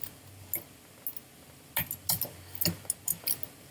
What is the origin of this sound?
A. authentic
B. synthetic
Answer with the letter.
A